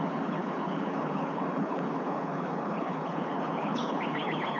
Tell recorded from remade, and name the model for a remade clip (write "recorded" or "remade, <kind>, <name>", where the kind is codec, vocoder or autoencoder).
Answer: remade, codec, HILCodec